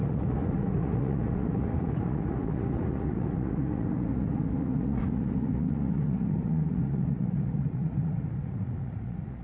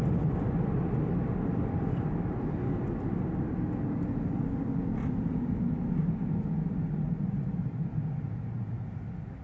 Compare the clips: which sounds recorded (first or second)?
second